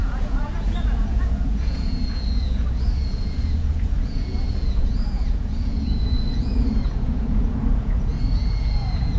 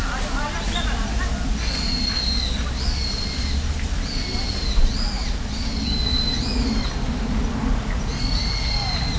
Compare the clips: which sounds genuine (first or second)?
second